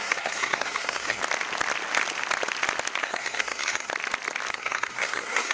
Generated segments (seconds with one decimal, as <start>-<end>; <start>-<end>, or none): 0.0-1.2; 3.0-3.9; 4.5-5.5